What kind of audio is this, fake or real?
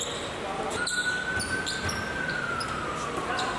real